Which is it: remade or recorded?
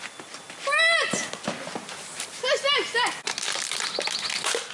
recorded